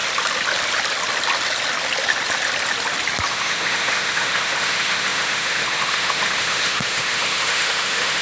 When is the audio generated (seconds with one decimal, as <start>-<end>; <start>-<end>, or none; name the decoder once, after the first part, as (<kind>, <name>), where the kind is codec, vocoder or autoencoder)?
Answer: 3.3-8.2 (autoencoder, DAC-VAE)